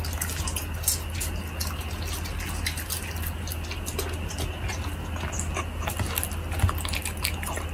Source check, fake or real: real